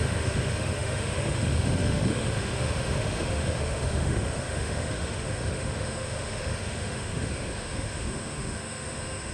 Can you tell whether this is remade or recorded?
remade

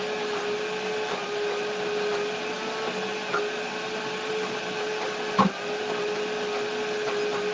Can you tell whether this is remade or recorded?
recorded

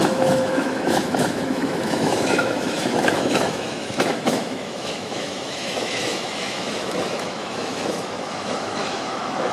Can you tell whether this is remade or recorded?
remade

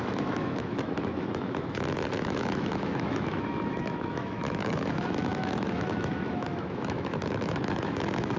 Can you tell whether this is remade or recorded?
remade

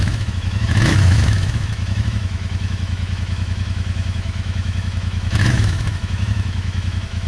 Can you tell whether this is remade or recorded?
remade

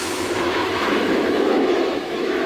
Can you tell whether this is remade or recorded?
remade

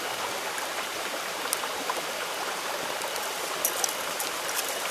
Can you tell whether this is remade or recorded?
recorded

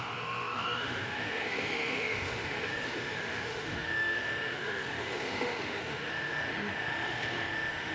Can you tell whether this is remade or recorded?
remade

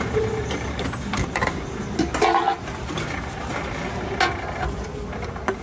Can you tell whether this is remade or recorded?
recorded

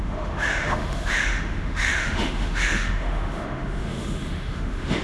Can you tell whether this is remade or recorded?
remade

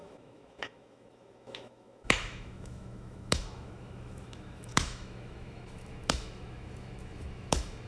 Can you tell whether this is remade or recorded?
remade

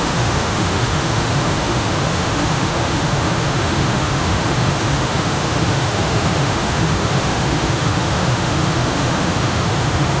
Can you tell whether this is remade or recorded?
remade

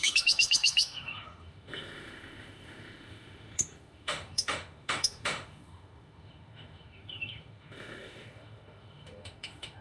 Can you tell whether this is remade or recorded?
remade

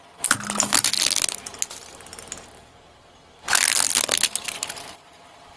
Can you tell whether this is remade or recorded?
recorded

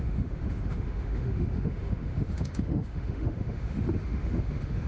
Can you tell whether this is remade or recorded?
remade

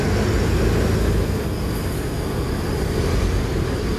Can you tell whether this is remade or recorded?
recorded